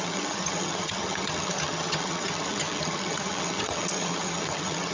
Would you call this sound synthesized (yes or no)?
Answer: yes